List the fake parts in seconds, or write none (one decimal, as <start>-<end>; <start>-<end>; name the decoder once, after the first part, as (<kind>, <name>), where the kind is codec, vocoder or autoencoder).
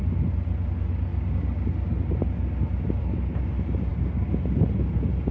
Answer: none